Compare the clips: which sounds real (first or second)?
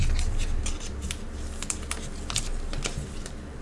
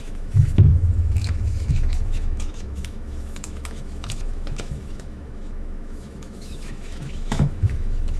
first